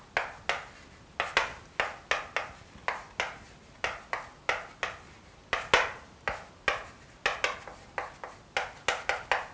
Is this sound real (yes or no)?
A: yes